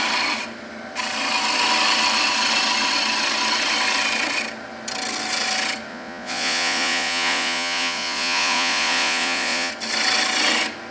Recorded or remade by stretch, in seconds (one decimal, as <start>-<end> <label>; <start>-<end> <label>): 0.0-5.9 recorded; 5.9-9.7 remade; 9.7-10.9 recorded